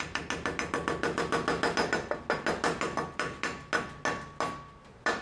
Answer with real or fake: real